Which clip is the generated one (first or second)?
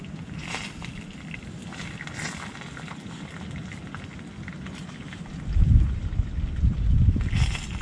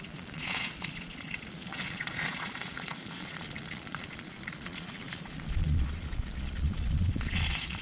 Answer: second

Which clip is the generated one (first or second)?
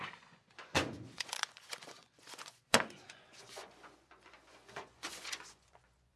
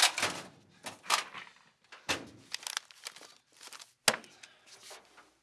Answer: first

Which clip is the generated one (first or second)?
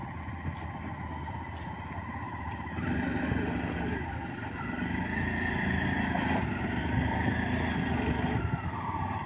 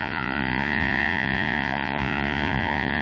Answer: second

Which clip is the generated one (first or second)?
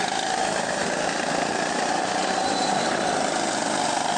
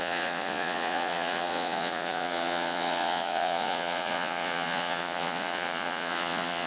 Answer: second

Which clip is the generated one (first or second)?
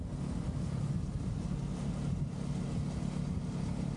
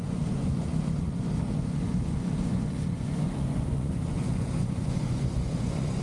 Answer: second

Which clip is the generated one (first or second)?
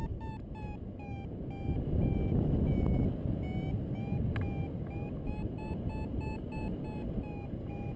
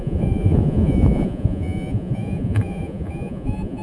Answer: second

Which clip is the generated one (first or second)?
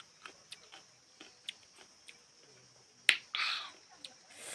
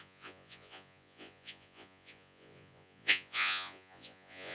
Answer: second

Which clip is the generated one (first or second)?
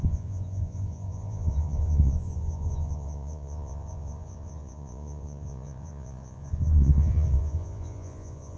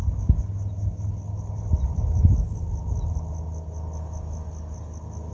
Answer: first